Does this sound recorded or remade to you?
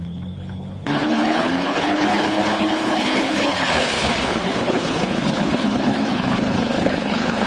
remade